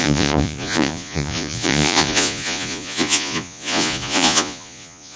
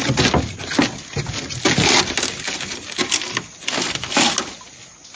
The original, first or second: second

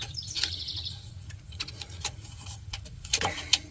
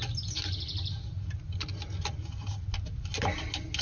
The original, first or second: second